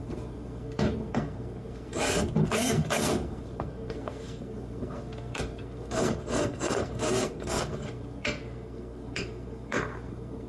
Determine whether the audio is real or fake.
fake